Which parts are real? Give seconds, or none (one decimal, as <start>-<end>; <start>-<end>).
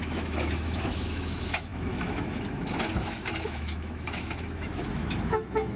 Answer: none